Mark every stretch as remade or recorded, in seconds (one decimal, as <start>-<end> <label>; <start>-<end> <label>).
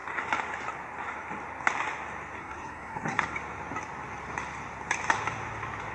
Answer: 0.0-2.4 recorded; 2.4-3.2 remade; 3.2-5.9 recorded